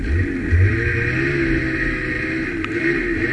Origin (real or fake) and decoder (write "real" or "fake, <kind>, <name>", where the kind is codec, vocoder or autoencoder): real